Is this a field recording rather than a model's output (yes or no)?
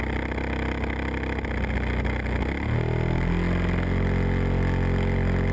yes